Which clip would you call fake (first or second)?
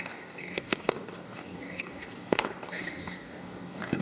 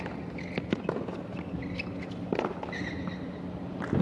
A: first